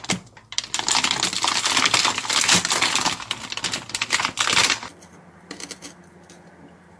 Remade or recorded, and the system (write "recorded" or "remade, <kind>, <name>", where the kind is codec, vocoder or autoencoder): recorded